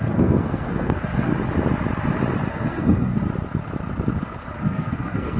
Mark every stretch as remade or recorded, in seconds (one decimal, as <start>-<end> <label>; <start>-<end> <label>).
0.0-1.3 remade; 1.3-2.5 recorded; 2.5-3.1 remade; 3.1-4.6 recorded; 4.6-5.4 remade